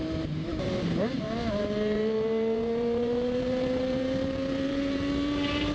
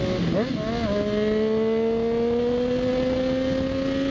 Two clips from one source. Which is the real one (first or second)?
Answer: second